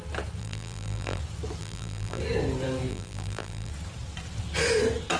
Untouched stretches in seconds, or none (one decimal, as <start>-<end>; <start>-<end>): 0.0-0.4; 1.2-1.6; 2.2-2.9; 3.7-5.2